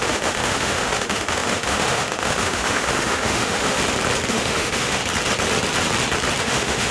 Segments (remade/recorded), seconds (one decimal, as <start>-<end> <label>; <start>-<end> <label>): 0.0-3.8 remade; 3.8-4.3 recorded; 4.3-5.0 remade; 5.0-6.4 recorded; 6.4-6.9 remade